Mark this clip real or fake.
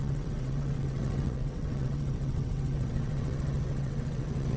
fake